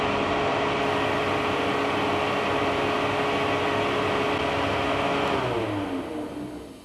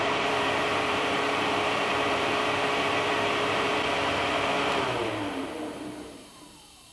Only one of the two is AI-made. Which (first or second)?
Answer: second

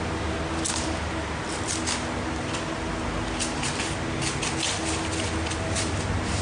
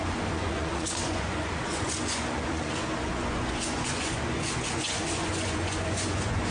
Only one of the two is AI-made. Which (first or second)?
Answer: second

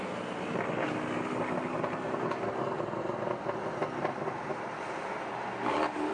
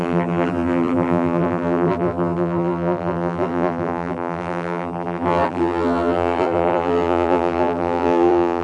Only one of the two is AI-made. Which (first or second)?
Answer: second